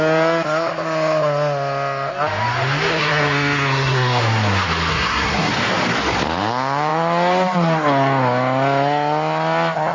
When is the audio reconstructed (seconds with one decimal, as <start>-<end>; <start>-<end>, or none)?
2.9-4.2; 4.9-5.5